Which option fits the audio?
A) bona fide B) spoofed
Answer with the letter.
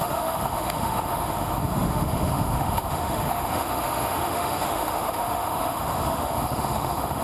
B